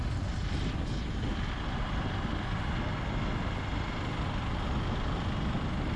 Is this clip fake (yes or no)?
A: no